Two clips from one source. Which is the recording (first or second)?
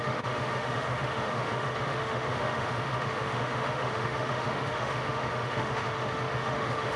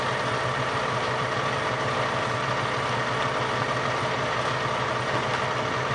second